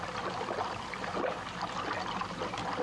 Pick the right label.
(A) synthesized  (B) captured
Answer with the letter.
B